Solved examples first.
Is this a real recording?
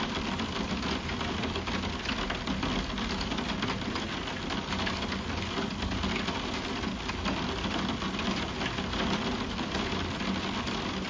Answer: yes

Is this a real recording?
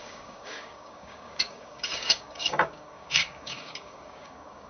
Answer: no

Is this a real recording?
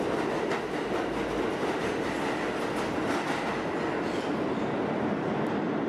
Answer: yes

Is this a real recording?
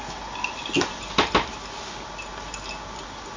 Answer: yes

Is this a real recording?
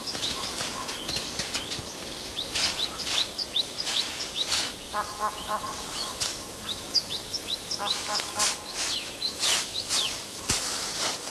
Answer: no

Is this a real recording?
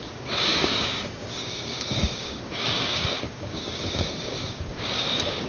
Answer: no